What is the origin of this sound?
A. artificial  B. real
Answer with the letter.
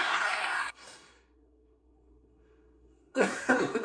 A